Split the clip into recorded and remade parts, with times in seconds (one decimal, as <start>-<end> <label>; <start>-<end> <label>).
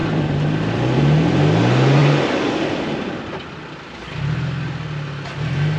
0.0-1.0 remade; 1.0-5.8 recorded